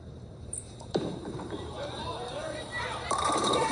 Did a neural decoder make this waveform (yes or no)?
yes